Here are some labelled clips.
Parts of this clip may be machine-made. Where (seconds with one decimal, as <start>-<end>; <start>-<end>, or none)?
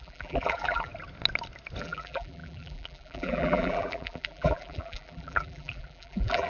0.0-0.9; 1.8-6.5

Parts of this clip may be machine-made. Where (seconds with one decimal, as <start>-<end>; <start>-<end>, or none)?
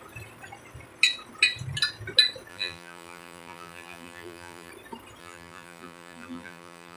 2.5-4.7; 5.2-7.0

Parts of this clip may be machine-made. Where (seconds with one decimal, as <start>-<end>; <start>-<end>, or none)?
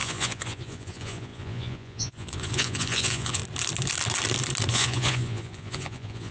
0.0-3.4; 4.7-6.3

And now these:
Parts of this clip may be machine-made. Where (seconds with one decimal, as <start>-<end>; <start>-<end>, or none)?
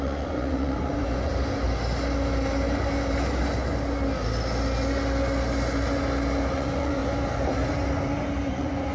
0.0-1.3; 6.5-7.0; 8.5-8.9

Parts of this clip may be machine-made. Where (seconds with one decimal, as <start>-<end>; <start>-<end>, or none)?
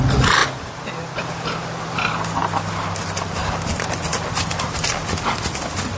none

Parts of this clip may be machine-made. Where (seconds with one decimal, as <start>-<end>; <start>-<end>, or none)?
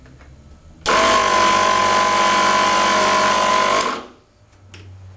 none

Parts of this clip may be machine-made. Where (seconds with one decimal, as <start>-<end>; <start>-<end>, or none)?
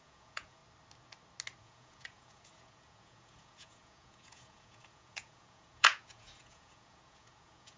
0.0-0.6; 1.6-7.8